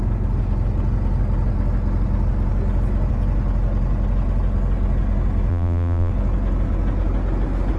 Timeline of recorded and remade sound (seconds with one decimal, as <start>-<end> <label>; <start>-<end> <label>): 0.0-5.5 recorded; 5.5-6.1 remade; 6.1-7.8 recorded